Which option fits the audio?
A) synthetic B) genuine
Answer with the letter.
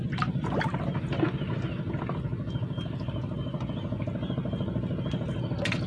B